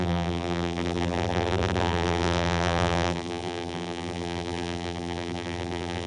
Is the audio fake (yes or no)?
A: yes